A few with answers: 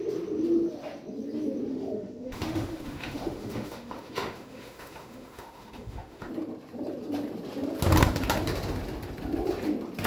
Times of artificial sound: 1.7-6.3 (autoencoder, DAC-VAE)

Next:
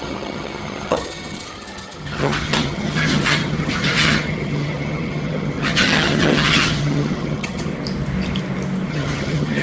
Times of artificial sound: 0.0-7.7 (vocoder, HiFi-GAN); 8.9-9.6

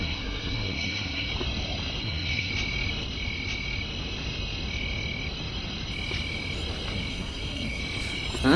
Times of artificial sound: 0.0-1.3 (codec, SNAC); 2.0-2.5; 7.1-7.8

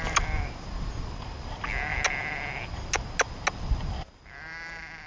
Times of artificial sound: none

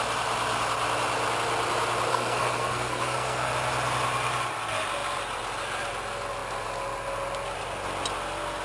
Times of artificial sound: 2.1-3.5 (codec, SNAC)